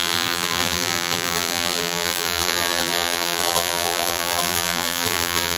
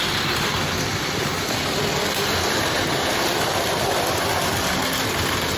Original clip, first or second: second